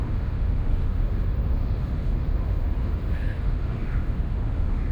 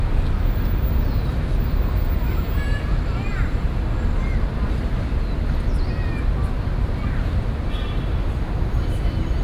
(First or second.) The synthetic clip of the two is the first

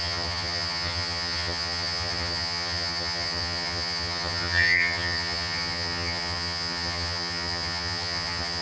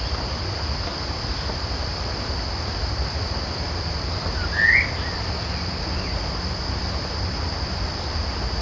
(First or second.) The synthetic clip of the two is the first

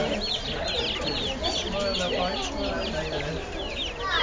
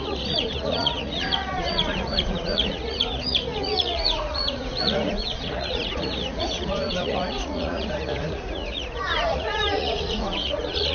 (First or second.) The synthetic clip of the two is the second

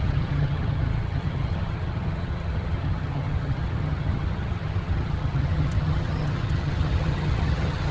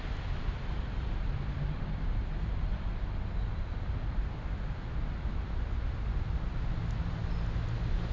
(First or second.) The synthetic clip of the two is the first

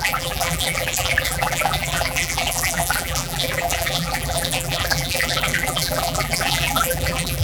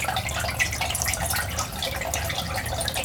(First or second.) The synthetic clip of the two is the first